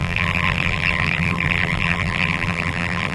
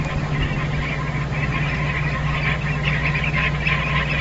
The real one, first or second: second